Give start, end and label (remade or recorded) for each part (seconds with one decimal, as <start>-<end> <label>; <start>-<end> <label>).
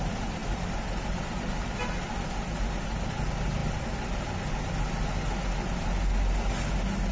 0.0-7.1 recorded